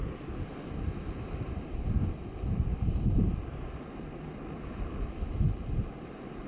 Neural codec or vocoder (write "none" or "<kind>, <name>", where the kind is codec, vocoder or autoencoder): none